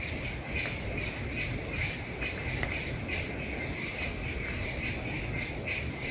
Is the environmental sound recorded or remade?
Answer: recorded